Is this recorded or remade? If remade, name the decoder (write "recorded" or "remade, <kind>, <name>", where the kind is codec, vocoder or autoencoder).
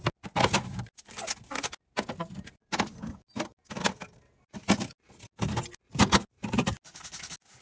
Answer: recorded